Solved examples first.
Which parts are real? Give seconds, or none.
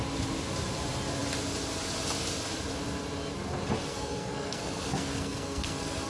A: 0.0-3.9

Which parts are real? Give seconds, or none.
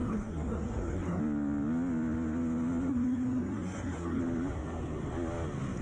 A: 1.2-2.9; 4.2-5.8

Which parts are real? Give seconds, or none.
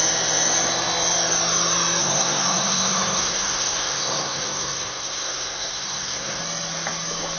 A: 0.0-2.0; 6.4-7.4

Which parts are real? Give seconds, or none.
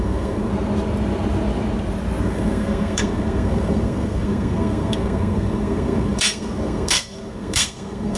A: 0.5-2.2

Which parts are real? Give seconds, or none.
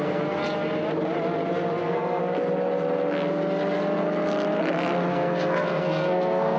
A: 0.4-1.8; 2.2-5.1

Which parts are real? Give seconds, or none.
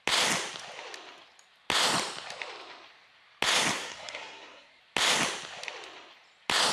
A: 0.0-3.7; 4.8-6.7